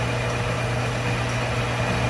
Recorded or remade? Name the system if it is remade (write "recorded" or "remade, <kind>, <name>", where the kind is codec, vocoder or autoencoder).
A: recorded